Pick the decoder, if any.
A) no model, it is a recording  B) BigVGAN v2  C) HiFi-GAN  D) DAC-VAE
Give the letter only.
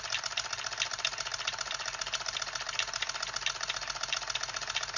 A